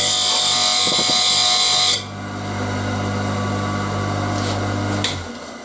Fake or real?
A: real